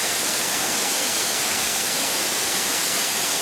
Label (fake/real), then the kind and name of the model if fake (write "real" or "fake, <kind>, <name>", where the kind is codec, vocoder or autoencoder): fake, codec, SNAC